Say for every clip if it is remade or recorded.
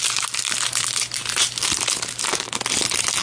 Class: recorded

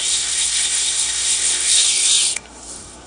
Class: remade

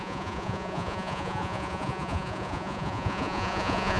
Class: remade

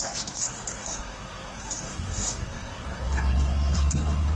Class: remade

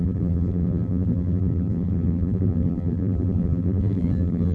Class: remade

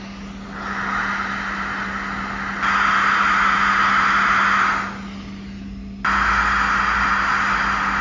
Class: recorded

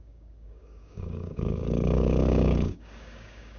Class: remade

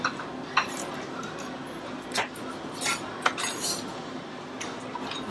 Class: recorded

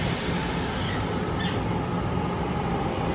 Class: recorded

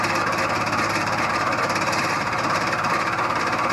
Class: remade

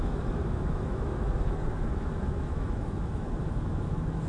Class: remade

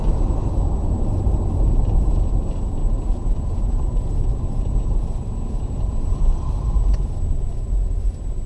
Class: remade